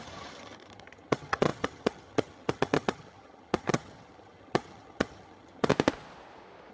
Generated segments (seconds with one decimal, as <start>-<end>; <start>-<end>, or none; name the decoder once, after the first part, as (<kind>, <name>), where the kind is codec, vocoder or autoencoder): 0.0-5.7 (vocoder, HiFi-GAN)